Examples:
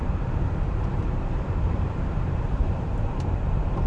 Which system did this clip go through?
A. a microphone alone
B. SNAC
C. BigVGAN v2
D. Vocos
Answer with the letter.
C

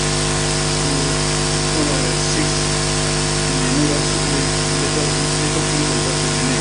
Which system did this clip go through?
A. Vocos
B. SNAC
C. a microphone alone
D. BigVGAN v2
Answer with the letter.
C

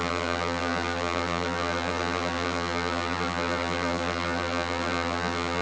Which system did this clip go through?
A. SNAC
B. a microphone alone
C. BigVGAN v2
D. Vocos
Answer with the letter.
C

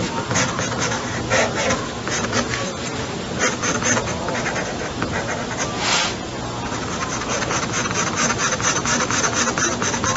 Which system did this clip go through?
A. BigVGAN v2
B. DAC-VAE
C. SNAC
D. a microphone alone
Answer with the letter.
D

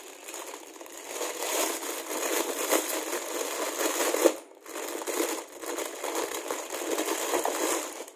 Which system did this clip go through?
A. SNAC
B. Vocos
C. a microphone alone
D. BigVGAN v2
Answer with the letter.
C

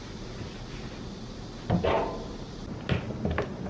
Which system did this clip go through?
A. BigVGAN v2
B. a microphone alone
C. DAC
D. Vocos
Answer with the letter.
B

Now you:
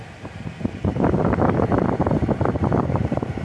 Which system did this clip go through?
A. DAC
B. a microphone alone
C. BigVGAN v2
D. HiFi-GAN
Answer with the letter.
C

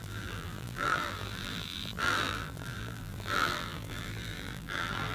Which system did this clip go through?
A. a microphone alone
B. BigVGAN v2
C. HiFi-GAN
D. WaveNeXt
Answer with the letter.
B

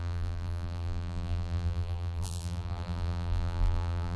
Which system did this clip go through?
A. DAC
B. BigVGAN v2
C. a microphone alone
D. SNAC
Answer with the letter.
B